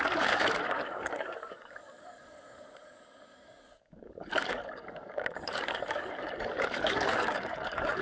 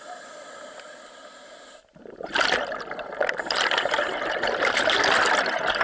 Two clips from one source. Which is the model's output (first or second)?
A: first